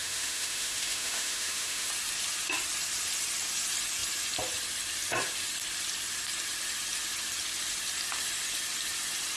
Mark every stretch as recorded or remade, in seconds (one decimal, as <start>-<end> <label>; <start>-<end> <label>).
0.0-1.9 remade; 1.9-9.4 recorded